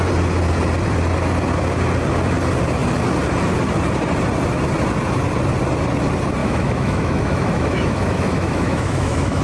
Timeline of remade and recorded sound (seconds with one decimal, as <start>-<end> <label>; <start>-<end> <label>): 0.0-6.4 recorded; 6.4-9.4 remade

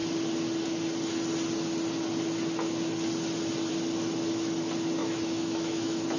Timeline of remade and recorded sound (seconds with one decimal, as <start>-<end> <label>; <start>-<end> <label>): 0.0-5.0 recorded; 5.0-6.2 remade

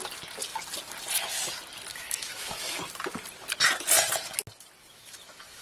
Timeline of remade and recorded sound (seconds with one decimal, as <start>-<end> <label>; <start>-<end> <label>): 0.0-1.9 recorded; 1.9-2.8 remade; 2.8-4.8 recorded; 4.8-5.6 remade